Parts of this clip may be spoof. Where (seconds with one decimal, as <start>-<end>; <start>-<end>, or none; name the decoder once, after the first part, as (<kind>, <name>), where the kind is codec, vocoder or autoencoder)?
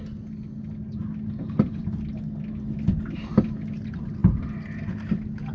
none